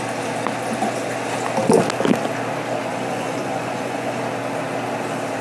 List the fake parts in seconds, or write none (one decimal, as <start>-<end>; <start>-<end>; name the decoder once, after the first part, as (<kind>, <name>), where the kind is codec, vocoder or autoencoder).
2.9-4.2 (vocoder, Vocos)